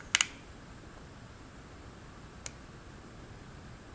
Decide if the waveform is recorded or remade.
recorded